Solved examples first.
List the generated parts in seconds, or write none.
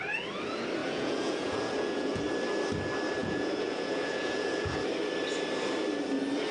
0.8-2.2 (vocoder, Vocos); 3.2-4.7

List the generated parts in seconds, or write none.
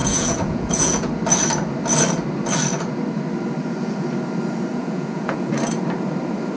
0.0-1.1 (vocoder, Vocos); 4.7-5.5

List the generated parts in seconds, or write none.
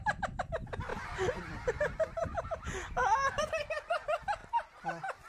0.9-3.5 (vocoder, BigVGAN v2); 4.4-5.3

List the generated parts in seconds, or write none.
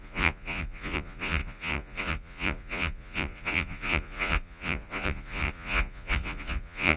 0.0-7.0 (vocoder, Vocos)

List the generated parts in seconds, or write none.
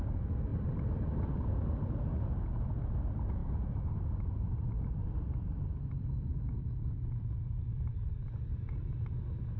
0.5-2.0 (vocoder, BigVGAN v2); 3.4-8.1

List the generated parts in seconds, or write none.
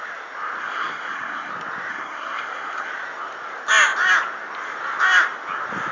0.6-1.5 (codec, SNAC); 1.9-2.9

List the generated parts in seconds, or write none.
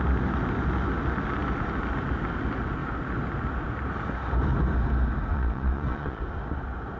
5.3-6.2 (vocoder, Vocos)